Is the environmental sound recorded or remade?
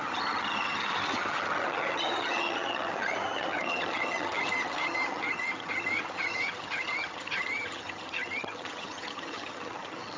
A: remade